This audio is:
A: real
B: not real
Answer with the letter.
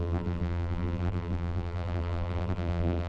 B